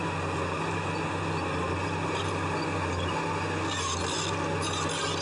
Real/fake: real